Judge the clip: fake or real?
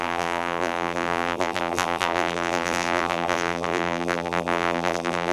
fake